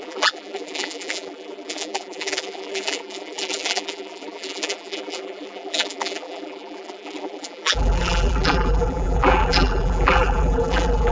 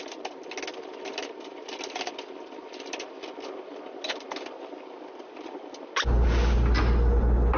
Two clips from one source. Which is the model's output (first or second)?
first